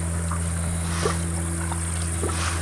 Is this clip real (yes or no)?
yes